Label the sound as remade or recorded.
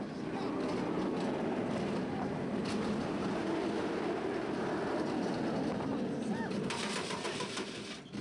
recorded